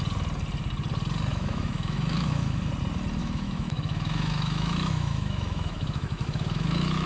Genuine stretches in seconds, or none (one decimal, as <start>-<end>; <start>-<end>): 0.0-1.3; 2.7-3.2